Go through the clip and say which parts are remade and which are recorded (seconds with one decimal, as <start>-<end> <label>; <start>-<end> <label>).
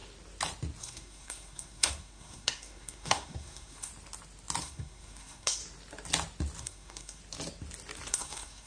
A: 0.0-0.8 recorded; 0.8-3.9 remade; 3.9-4.6 recorded; 4.6-5.6 remade; 5.6-6.6 recorded; 6.6-7.2 remade; 7.2-8.1 recorded; 8.1-8.7 remade